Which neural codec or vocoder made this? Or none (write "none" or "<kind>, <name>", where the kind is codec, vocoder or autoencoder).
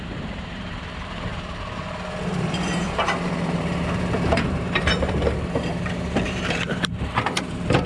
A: vocoder, BigVGAN v2